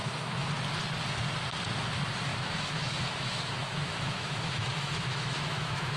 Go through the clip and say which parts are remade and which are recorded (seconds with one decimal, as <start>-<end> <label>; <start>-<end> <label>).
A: 0.0-0.5 remade; 0.5-2.3 recorded; 2.3-6.0 remade